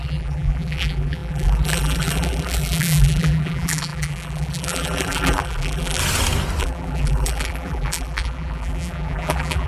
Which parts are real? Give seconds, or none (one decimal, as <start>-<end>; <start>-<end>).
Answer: 6.0-6.6